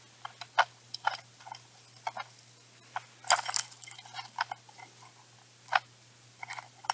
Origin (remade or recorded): recorded